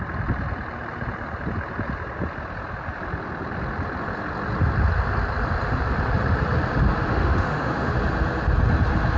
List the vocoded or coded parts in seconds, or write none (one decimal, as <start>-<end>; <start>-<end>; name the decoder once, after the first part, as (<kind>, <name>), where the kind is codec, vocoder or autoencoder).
7.1-7.9 (autoencoder, DAC-VAE)